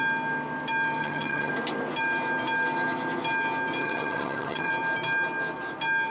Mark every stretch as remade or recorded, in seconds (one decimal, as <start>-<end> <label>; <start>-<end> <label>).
0.0-1.0 recorded; 1.0-1.5 remade; 1.5-3.8 recorded; 3.8-4.7 remade; 4.7-6.1 recorded